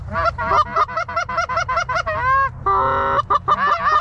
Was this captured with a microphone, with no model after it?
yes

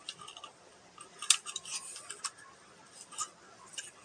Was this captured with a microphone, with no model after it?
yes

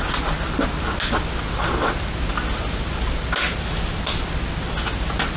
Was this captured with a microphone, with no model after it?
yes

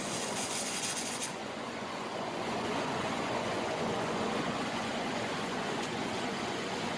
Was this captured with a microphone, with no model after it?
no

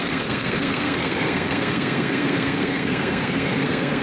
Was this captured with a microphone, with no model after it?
no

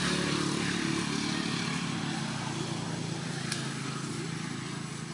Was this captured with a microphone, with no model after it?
yes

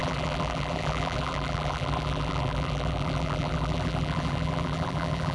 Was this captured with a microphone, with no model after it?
no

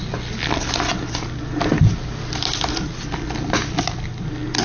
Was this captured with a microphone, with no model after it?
yes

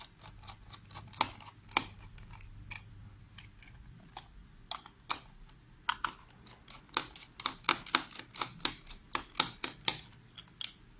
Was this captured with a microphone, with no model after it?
yes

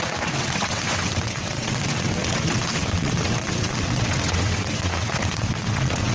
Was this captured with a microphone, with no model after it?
no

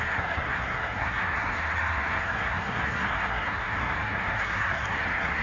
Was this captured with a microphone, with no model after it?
no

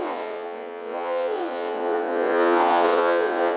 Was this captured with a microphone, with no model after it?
no